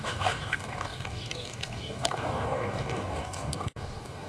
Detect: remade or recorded remade